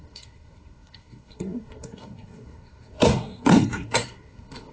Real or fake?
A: fake